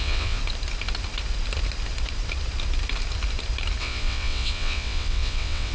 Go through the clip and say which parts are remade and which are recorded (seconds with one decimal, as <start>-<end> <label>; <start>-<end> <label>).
0.0-0.4 remade; 0.4-3.8 recorded; 3.8-5.7 remade